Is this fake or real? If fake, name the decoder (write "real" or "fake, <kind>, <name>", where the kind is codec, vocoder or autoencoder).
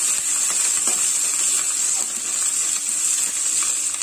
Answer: real